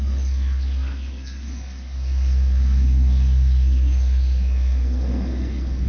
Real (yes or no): no